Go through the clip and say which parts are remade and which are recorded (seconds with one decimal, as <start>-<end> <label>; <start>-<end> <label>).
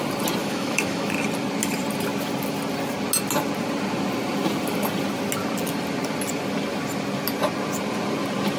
0.0-0.4 recorded; 0.4-1.1 remade; 1.1-8.6 recorded